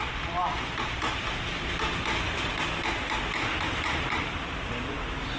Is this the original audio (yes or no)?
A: yes